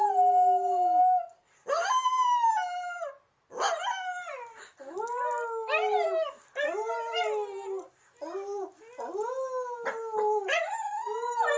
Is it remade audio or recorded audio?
recorded